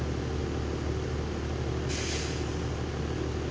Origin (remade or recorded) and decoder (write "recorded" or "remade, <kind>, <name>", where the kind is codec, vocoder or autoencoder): recorded